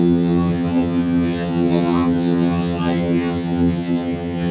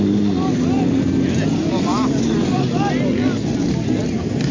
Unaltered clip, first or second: second